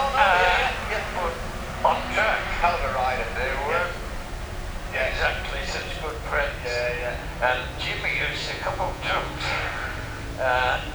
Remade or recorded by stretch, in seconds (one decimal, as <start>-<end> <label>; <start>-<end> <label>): 0.0-8.4 recorded; 8.4-9.3 remade; 9.3-10.9 recorded